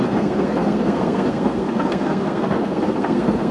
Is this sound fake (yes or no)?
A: yes